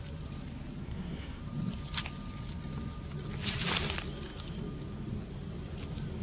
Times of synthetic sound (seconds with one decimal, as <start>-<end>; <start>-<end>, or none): 0.8-1.4